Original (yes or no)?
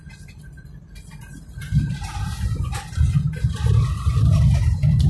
yes